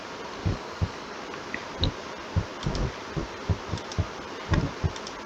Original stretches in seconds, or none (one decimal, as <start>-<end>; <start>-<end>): 0.0-0.4; 1.2-5.3